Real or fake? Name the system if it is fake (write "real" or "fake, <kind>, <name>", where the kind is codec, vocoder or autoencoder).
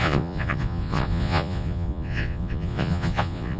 fake, vocoder, Vocos